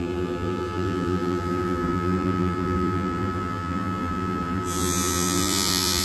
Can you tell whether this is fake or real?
fake